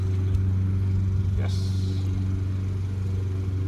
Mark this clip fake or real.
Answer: real